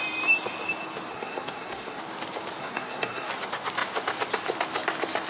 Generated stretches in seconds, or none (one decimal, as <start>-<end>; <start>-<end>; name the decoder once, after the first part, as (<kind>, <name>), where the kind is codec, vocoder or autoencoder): 1.1-2.0 (codec, SNAC); 2.6-3.3